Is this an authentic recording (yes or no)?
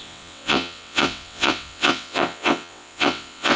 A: no